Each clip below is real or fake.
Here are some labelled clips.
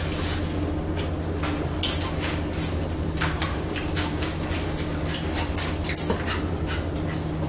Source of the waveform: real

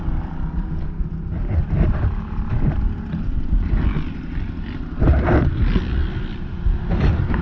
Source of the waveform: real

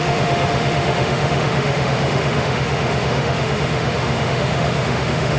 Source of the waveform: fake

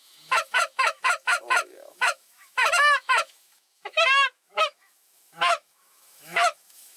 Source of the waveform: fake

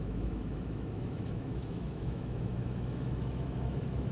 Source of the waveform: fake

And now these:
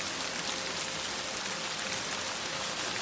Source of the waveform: real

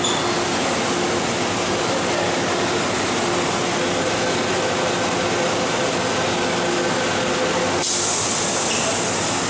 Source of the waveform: real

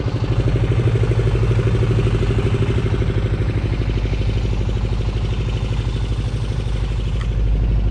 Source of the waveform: real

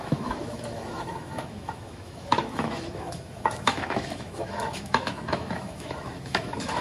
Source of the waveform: fake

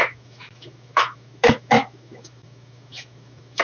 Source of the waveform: fake